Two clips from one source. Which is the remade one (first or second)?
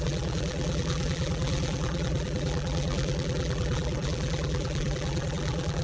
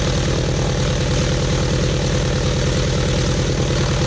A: first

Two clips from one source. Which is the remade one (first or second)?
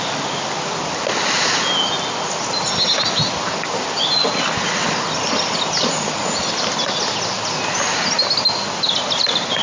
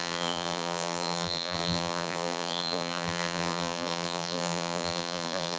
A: second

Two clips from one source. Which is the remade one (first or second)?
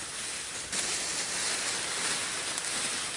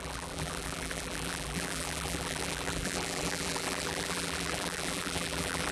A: second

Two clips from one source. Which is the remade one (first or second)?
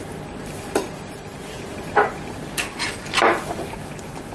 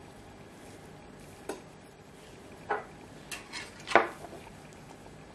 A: first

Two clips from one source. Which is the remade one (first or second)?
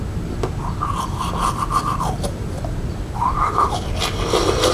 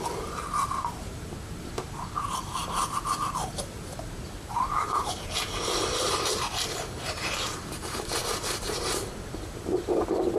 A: second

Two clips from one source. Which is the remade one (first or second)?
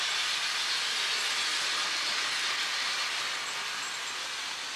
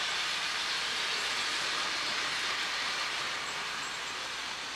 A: second